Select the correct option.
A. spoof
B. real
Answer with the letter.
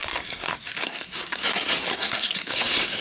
A